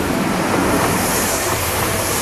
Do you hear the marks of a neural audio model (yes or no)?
yes